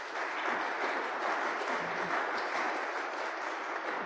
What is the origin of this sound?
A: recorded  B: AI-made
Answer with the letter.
A